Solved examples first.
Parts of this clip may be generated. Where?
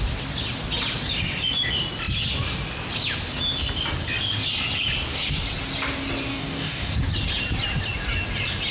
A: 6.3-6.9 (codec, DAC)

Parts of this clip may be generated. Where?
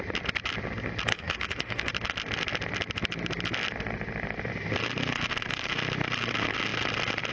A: 1.1-1.9 (autoencoder, DAC-VAE)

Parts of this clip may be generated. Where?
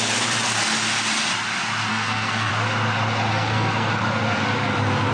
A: 1.9-2.5 (codec, SNAC); 3.3-3.9